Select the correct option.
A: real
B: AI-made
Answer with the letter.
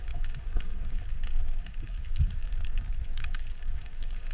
B